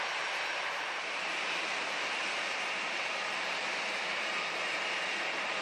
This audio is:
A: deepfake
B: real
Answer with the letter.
A